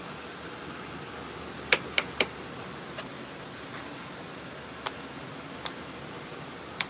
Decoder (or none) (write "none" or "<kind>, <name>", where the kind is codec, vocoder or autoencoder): none